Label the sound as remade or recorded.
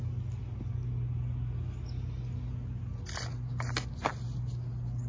recorded